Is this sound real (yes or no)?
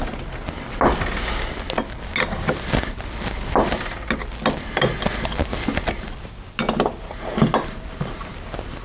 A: yes